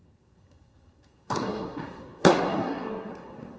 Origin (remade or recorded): remade